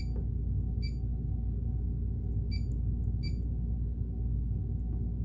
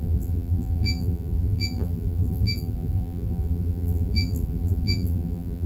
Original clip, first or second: first